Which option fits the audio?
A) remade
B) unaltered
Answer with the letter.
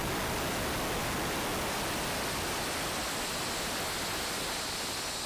B